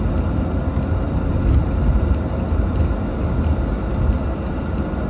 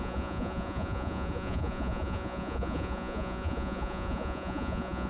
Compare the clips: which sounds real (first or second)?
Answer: first